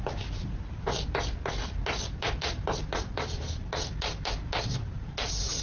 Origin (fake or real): real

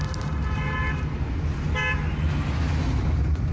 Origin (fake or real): real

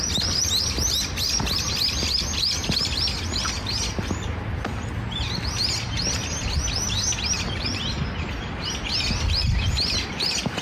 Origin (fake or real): real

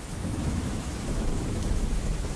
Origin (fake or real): fake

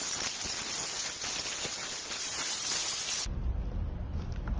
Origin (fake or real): real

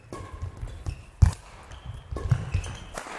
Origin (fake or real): real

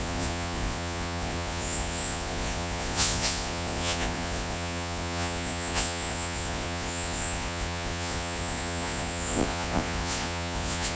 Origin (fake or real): fake